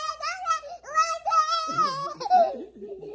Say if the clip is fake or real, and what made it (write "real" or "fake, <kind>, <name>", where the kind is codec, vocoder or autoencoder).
real